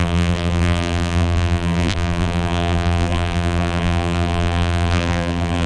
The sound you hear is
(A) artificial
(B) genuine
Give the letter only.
A